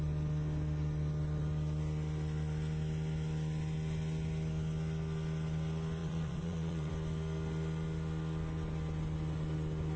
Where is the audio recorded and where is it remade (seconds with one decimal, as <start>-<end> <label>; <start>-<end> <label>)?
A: 0.0-6.0 recorded; 6.0-6.9 remade; 6.9-10.0 recorded